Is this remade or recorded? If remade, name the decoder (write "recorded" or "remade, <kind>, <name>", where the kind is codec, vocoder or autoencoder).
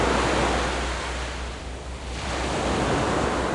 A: recorded